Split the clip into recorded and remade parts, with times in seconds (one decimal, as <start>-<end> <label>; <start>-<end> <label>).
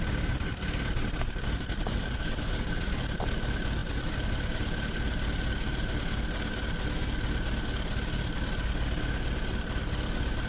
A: 0.0-10.5 recorded